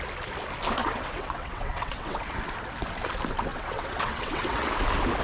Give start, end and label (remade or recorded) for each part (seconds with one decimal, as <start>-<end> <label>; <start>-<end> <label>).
0.0-0.8 recorded; 0.8-2.3 remade; 2.3-3.5 recorded; 3.5-4.7 remade; 4.7-5.2 recorded